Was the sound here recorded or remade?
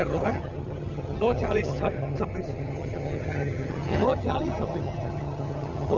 remade